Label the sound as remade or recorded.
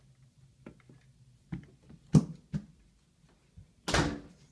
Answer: recorded